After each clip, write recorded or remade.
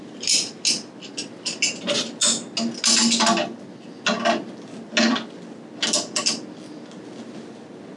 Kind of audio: recorded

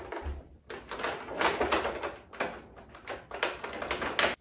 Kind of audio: recorded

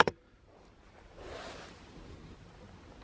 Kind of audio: recorded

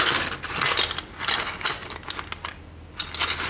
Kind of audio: recorded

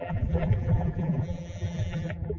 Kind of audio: remade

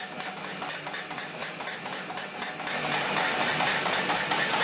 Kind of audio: recorded